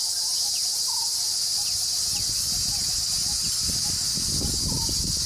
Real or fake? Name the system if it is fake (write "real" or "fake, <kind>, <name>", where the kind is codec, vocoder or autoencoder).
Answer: real